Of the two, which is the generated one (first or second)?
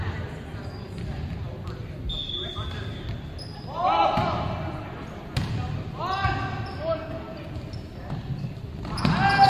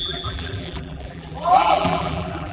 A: second